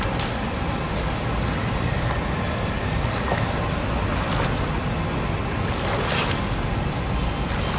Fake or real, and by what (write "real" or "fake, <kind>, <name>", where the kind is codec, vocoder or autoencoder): real